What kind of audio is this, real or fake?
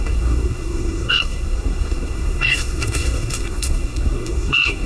fake